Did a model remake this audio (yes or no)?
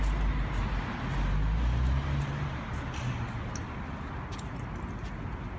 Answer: no